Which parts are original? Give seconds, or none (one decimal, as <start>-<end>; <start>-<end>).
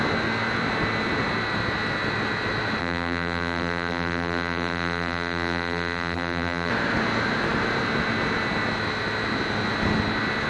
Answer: 0.0-2.8; 6.7-10.5